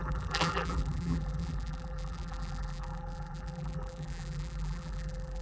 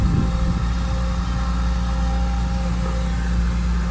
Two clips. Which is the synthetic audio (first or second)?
first